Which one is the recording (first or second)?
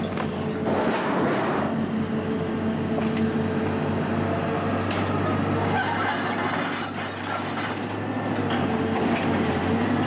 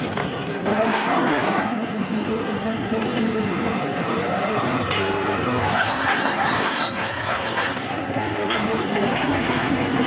first